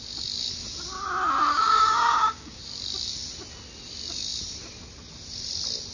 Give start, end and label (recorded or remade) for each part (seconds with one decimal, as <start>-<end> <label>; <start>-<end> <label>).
0.0-1.5 recorded; 1.5-2.6 remade; 2.6-5.9 recorded